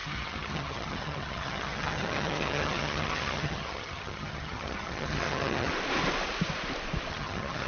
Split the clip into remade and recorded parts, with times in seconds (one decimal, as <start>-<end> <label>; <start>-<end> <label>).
0.0-5.7 remade; 5.7-7.1 recorded; 7.1-7.7 remade